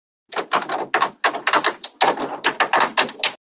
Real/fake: real